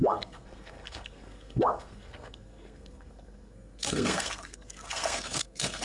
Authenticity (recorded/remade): remade